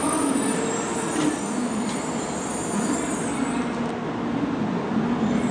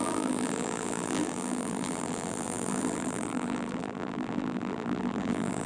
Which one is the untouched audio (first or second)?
first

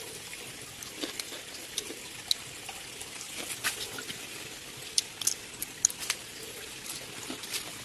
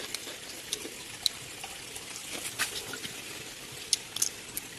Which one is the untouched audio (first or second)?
first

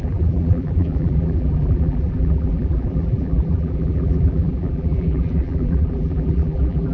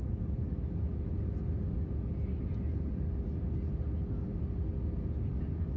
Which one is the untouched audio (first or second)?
second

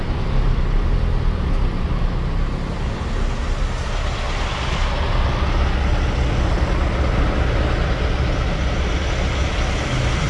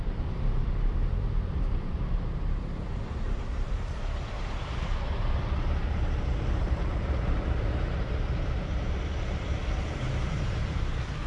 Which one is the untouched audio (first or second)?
first